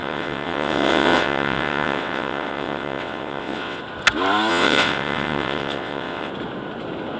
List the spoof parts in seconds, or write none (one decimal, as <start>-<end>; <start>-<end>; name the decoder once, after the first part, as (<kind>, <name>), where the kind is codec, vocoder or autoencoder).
0.0-3.8 (vocoder, WaveNeXt); 4.5-6.3